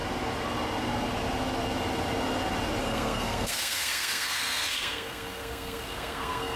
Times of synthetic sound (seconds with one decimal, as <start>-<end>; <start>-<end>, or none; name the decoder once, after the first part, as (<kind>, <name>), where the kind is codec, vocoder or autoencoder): 2.8-6.6 (codec, SNAC)